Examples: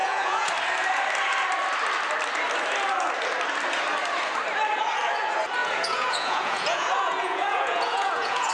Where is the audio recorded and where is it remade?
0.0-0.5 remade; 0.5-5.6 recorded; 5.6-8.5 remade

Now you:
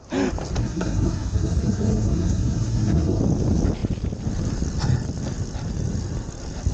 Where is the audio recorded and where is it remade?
0.0-0.6 recorded; 0.6-3.2 remade; 3.2-6.7 recorded